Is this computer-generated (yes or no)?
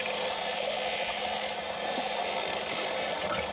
no